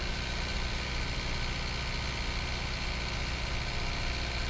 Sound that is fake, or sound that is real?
real